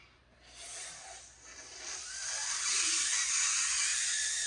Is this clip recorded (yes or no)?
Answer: yes